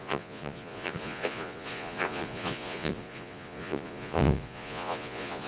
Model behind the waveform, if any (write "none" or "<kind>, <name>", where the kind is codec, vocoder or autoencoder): vocoder, Vocos